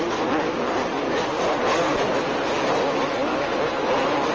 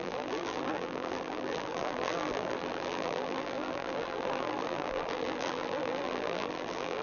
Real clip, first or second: first